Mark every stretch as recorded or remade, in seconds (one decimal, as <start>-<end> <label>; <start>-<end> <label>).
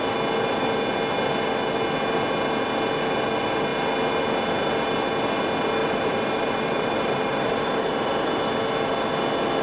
0.0-5.8 recorded; 5.8-8.4 remade; 8.4-9.6 recorded